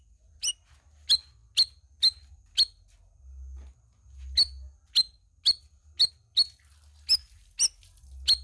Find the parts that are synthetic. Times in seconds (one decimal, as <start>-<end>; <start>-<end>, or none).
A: none